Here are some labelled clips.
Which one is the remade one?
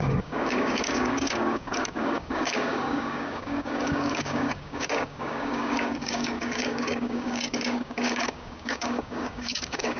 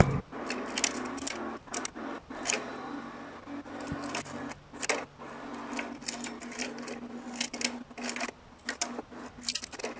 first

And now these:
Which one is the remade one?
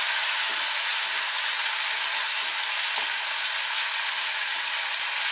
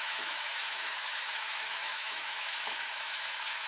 second